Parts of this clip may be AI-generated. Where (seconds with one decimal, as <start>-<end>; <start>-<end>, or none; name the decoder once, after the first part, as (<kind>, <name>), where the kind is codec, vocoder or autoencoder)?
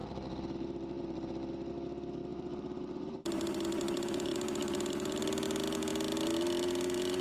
0.0-1.3 (vocoder, BigVGAN v2); 2.3-5.2